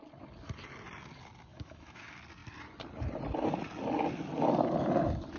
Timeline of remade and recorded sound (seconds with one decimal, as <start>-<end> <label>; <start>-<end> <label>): 0.0-1.5 recorded; 1.5-2.0 remade; 2.0-5.4 recorded